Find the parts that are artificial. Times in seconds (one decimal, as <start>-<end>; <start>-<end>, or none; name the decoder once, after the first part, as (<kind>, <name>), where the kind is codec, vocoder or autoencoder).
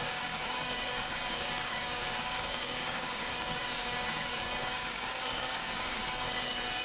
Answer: 0.0-6.0 (codec, DAC)